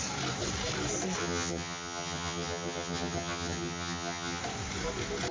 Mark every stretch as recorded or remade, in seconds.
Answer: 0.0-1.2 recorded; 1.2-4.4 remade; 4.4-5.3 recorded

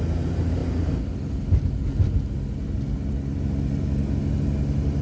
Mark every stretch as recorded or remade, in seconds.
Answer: 0.0-5.0 recorded

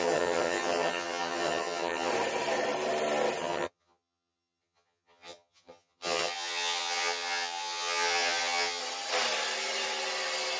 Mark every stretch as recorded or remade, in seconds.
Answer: 0.0-2.1 remade; 2.1-3.4 recorded; 3.4-8.8 remade; 8.8-10.6 recorded

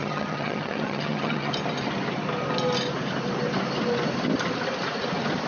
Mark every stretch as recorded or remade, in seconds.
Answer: 0.0-1.5 remade; 1.5-5.5 recorded

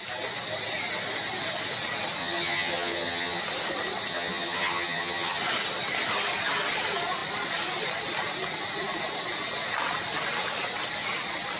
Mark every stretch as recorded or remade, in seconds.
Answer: 0.0-2.2 recorded; 2.2-3.4 remade; 3.4-4.1 recorded; 4.1-5.4 remade; 5.4-11.6 recorded

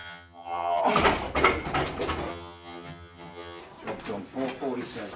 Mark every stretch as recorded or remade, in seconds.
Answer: 0.0-0.8 remade; 0.8-2.3 recorded; 2.3-3.6 remade; 3.6-5.2 recorded

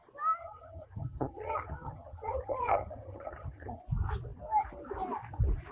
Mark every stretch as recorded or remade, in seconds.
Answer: 0.0-0.4 recorded; 0.4-3.8 remade; 3.8-5.7 recorded